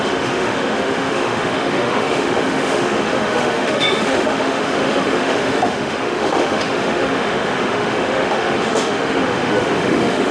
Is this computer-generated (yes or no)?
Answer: yes